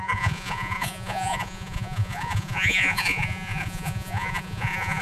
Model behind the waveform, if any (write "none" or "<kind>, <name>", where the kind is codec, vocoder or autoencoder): vocoder, Vocos